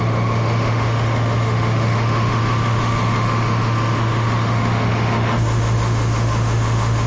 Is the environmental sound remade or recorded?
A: remade